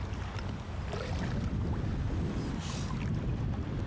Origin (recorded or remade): recorded